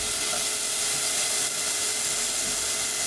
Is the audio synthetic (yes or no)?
no